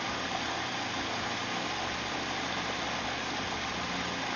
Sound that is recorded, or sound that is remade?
recorded